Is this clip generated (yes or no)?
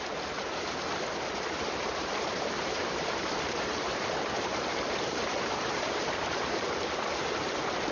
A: yes